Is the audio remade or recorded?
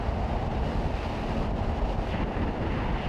recorded